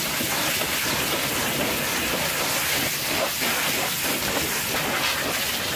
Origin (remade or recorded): recorded